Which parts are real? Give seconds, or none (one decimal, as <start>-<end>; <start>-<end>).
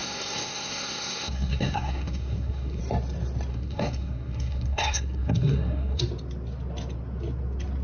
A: 2.8-3.5; 6.0-7.8